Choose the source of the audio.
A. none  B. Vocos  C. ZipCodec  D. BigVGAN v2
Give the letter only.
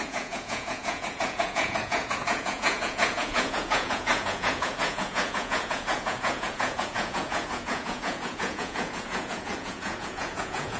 B